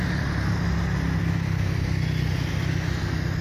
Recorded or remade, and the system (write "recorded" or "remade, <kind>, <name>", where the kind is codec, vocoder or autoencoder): recorded